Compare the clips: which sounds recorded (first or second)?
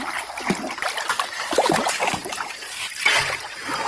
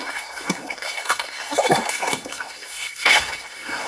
first